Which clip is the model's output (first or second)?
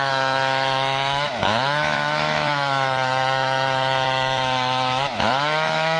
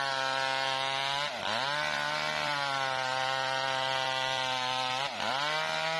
first